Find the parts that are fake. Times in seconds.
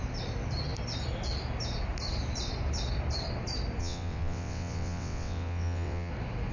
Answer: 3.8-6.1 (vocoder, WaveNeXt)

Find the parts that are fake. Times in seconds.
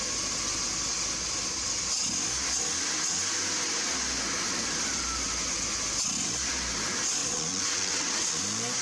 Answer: 7.2-8.4 (vocoder, WaveNeXt)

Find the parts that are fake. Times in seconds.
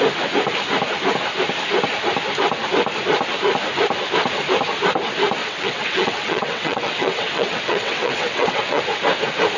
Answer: 5.4-8.8 (vocoder, WaveNeXt)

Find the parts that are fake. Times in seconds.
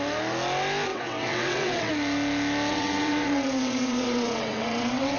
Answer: 0.9-1.9 (vocoder, WaveNeXt); 2.7-5.2